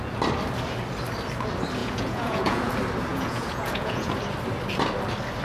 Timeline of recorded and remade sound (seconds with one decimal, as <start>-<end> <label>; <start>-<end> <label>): 0.0-1.8 recorded; 1.8-2.7 remade; 2.7-3.1 recorded; 3.1-4.1 remade; 4.1-5.4 recorded